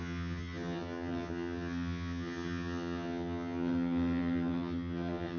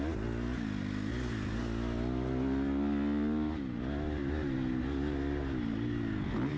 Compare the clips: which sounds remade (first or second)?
first